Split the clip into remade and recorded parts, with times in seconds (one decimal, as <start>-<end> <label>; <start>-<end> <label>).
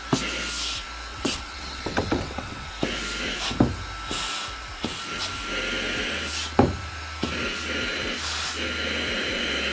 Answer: 0.0-1.1 recorded; 1.1-2.7 remade; 2.7-9.7 recorded